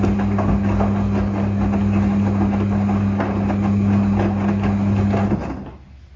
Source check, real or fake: real